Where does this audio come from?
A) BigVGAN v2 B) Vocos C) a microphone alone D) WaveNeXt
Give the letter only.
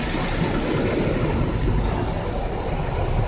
C